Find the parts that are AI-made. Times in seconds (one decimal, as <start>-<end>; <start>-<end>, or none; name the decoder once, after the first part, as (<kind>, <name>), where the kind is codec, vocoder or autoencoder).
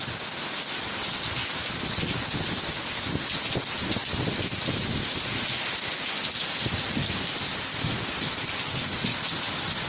none